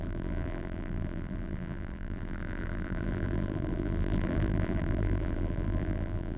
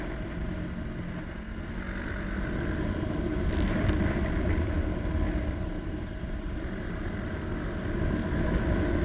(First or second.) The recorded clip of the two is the second